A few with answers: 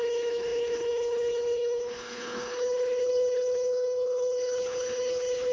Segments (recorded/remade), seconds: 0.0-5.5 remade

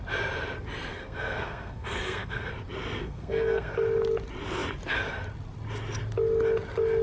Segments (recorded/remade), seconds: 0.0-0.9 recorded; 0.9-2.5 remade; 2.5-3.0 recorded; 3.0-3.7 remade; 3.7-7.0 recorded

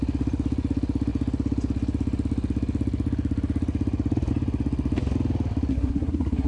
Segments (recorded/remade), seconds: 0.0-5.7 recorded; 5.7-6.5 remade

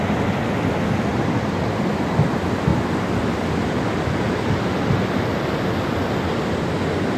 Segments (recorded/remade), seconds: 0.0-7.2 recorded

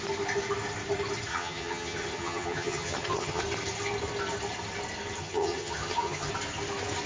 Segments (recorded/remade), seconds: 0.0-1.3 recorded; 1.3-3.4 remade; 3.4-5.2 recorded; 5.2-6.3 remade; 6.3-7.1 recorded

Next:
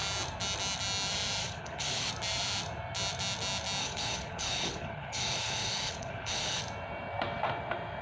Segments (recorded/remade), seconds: 0.0-1.4 recorded; 1.4-2.1 remade; 2.1-3.8 recorded; 3.8-6.6 remade; 6.6-8.0 recorded